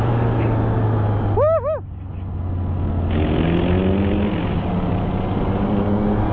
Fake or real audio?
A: real